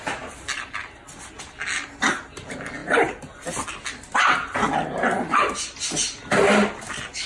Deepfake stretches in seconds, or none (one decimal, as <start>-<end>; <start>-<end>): 2.8-3.7